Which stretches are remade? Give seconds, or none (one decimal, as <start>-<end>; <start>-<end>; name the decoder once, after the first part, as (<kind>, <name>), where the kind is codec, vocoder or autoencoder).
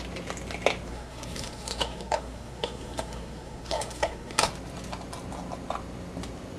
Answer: 0.9-4.5 (codec, SNAC)